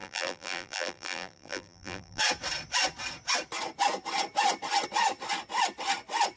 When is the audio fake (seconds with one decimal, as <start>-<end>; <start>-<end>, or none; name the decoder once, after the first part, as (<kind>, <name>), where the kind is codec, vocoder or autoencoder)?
0.0-2.2 (vocoder, BigVGAN v2)